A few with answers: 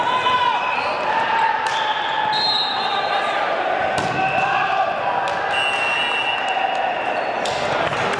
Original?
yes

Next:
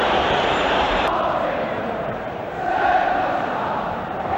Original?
no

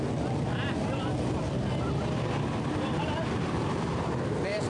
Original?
no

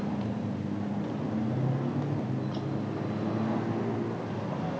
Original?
yes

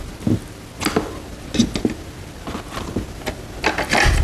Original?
yes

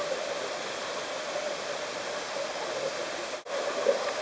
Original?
yes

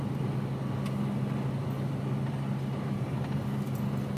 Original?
yes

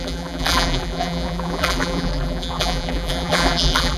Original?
no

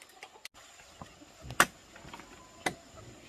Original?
yes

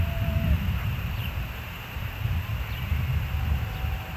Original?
no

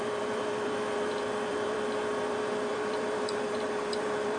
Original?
no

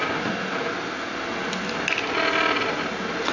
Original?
yes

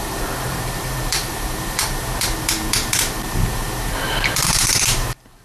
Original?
no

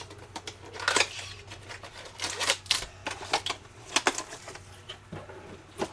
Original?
yes